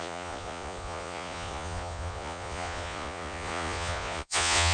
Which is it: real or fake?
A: fake